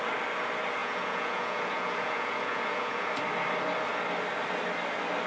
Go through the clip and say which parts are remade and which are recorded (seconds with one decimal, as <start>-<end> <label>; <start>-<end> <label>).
0.0-0.8 recorded; 0.8-3.1 remade; 3.1-5.3 recorded